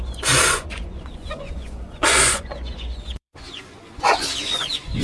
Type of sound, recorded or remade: remade